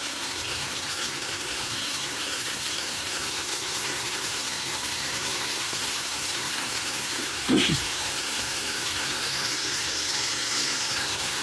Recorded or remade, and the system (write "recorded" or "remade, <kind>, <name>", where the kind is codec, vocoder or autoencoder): remade, codec, SNAC